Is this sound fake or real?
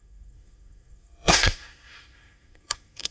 fake